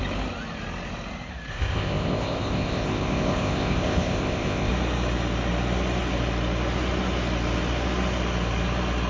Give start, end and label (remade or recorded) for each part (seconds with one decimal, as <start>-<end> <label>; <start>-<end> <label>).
0.0-1.5 recorded; 1.5-4.7 remade; 4.7-9.1 recorded